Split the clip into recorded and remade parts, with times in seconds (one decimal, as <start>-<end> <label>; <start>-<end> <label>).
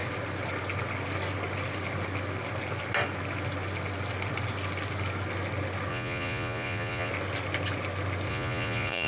0.0-5.9 recorded; 5.9-7.1 remade; 7.1-8.3 recorded; 8.3-9.1 remade